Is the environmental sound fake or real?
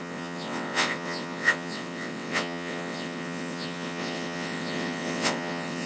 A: fake